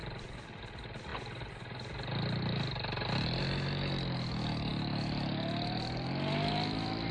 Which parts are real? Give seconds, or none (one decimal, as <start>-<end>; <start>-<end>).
0.6-7.1